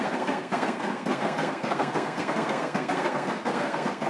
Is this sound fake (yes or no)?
yes